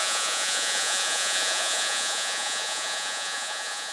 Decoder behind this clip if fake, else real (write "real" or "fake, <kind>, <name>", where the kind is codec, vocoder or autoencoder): fake, vocoder, Vocos